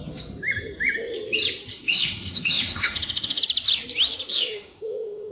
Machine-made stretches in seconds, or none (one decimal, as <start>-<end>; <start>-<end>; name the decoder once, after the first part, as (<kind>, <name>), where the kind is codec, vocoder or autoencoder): 1.7-3.4 (autoencoder, DAC-VAE); 4.3-5.3